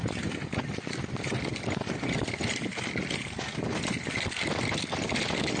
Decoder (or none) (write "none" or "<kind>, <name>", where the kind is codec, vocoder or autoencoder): none